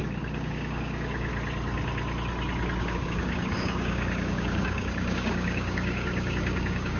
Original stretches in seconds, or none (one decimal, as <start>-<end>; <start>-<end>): 1.3-2.8